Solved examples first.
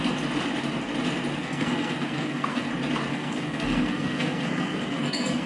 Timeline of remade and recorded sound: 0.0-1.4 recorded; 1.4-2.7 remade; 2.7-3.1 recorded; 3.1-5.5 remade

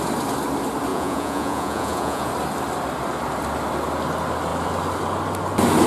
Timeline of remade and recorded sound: 0.0-0.9 recorded; 0.9-2.3 remade; 2.3-5.9 recorded

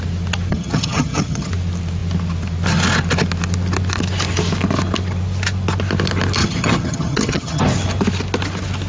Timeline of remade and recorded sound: 0.0-0.5 recorded; 0.5-1.5 remade; 1.5-6.4 recorded; 6.4-7.6 remade; 7.6-8.9 recorded

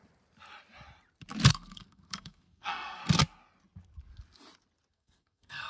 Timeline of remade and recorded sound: 0.0-1.5 recorded; 1.5-3.0 remade; 3.0-4.9 recorded; 4.9-5.7 remade

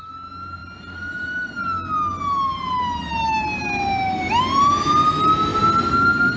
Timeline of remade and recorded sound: 0.0-6.4 recorded

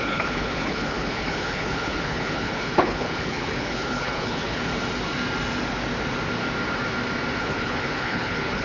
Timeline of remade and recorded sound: 0.0-4.7 remade; 4.7-7.4 recorded; 7.4-8.6 remade